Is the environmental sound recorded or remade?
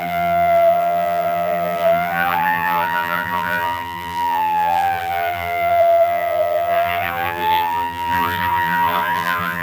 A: remade